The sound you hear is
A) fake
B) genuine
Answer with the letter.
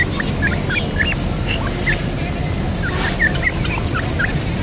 B